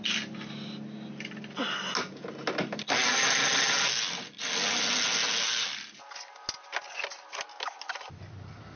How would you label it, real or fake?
real